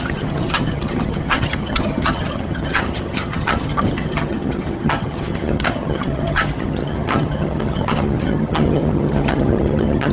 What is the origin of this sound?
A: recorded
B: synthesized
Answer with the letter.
B